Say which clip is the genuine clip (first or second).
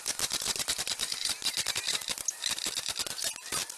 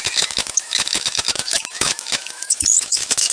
first